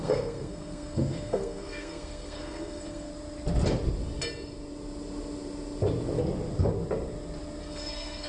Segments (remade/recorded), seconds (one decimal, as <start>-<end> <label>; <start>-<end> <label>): 0.0-3.1 remade; 3.1-7.7 recorded; 7.7-8.3 remade